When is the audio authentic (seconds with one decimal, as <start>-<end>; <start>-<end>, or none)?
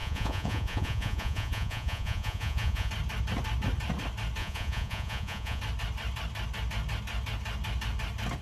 2.9-4.4; 5.6-8.4